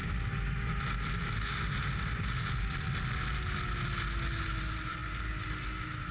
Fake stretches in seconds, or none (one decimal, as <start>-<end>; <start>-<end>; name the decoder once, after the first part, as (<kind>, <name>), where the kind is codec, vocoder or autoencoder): none